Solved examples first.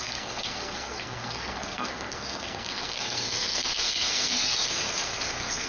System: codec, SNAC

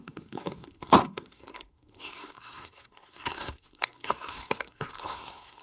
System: codec, SNAC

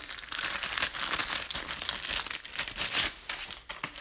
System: none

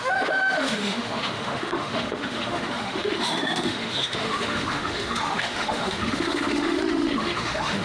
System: autoencoder, DAC-VAE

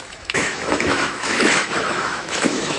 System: autoencoder, DAC-VAE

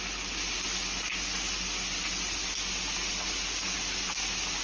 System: none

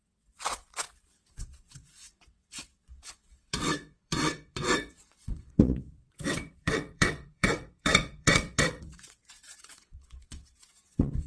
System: vocoder, WaveNeXt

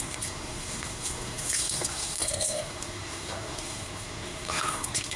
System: codec, SNAC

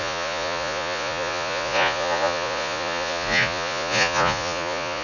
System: vocoder, Vocos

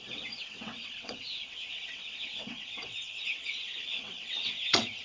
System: vocoder, WaveNeXt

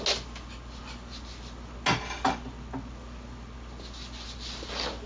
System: none